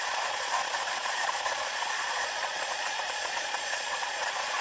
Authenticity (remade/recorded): remade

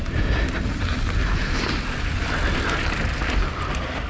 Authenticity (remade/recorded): recorded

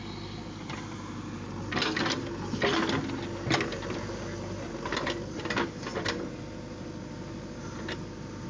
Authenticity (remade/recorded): recorded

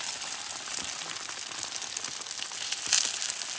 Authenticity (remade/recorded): recorded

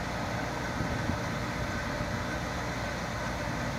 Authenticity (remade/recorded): recorded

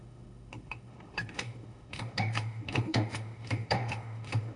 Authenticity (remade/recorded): remade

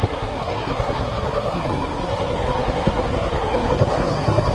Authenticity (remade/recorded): remade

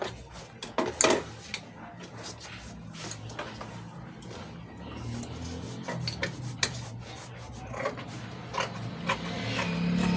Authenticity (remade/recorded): recorded